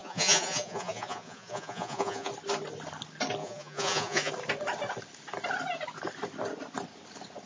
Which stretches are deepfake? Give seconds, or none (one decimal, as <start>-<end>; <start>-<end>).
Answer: 0.0-2.3; 3.4-4.3